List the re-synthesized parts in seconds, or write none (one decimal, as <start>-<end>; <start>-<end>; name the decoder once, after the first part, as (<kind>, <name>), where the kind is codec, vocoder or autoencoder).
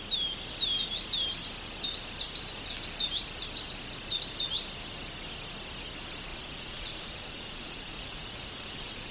6.3-9.1 (vocoder, Vocos)